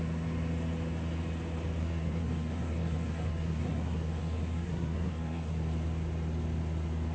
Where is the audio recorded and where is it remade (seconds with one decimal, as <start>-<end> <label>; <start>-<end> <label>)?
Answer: 0.0-1.8 recorded; 1.8-5.5 remade; 5.5-7.1 recorded